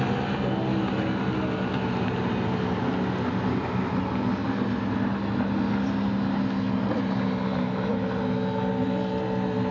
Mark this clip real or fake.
real